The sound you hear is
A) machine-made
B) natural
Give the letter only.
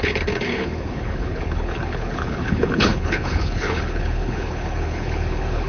A